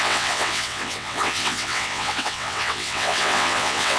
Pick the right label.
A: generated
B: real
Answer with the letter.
A